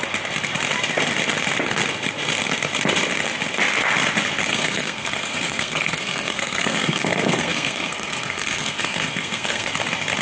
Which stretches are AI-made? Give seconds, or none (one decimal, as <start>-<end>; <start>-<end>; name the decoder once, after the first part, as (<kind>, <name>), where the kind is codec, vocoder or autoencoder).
4.5-9.7 (codec, SNAC)